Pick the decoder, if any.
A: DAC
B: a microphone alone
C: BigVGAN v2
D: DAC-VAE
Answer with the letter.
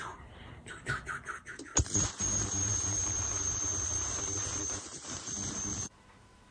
C